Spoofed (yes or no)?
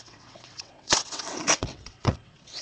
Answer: yes